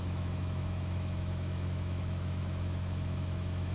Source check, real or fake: fake